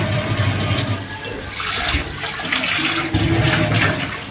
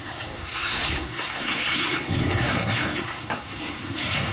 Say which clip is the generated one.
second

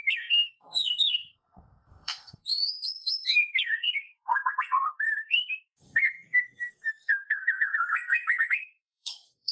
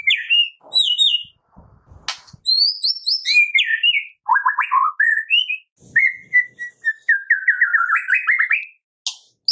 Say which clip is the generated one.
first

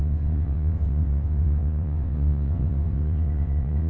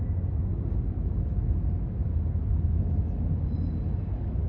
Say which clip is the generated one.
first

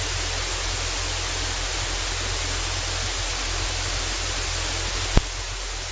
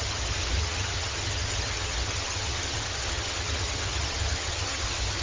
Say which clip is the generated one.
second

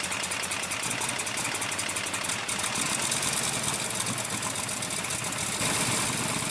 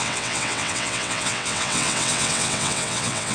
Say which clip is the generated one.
second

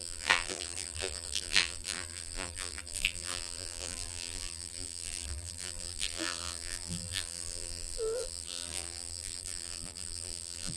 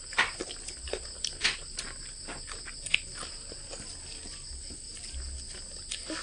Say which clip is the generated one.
first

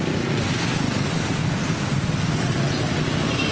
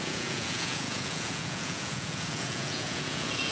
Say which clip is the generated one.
second